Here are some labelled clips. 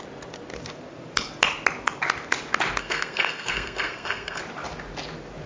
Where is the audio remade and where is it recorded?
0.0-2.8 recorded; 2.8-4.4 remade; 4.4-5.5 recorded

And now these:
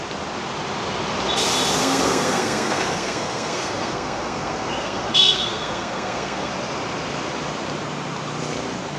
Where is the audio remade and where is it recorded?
0.0-1.8 recorded; 1.8-6.5 remade; 6.5-9.0 recorded

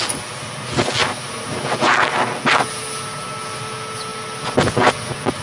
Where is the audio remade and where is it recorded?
0.0-5.4 recorded

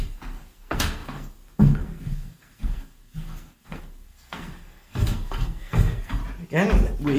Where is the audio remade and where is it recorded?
0.0-6.2 remade; 6.2-7.2 recorded